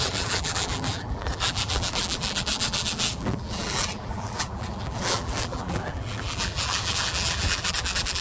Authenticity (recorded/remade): remade